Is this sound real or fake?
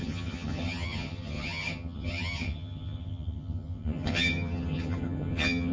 fake